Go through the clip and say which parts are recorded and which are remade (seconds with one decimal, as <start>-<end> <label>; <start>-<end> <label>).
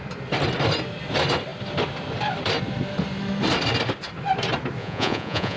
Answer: 0.0-4.8 recorded; 4.8-5.6 remade